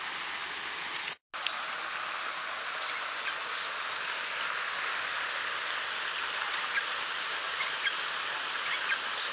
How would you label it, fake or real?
real